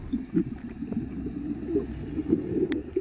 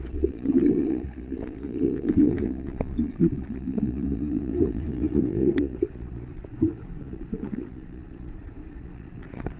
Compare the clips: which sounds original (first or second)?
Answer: first